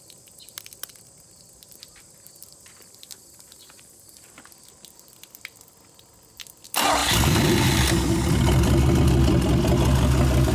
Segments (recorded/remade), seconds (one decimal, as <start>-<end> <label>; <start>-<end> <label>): 0.0-10.5 recorded